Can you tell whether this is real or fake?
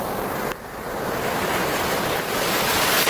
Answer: real